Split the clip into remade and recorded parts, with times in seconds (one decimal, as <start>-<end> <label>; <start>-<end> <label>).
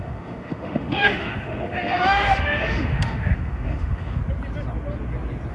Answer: 0.0-4.2 remade; 4.2-5.5 recorded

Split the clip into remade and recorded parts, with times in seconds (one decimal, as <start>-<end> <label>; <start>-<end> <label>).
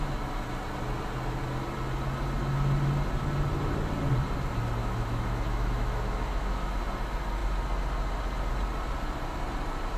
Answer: 0.0-4.8 recorded; 4.8-6.8 remade; 6.8-10.0 recorded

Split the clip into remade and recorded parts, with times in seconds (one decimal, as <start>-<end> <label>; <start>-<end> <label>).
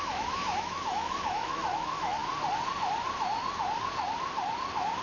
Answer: 0.0-2.2 remade; 2.2-5.0 recorded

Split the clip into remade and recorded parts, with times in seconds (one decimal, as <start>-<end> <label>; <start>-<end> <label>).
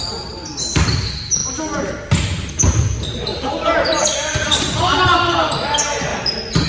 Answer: 0.0-3.3 recorded; 3.3-5.0 remade; 5.0-6.7 recorded